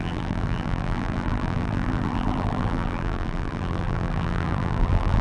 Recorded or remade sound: remade